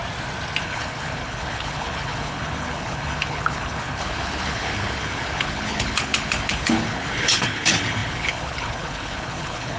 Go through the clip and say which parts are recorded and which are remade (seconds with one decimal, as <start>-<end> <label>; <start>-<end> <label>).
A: 0.0-0.6 recorded; 0.6-9.8 remade